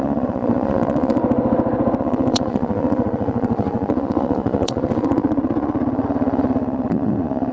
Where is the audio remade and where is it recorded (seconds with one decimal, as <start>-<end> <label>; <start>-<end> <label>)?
0.0-1.2 remade; 1.2-2.0 recorded; 2.0-7.5 remade